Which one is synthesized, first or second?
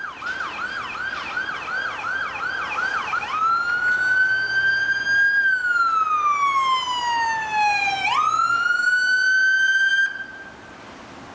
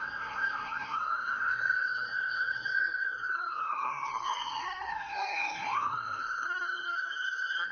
second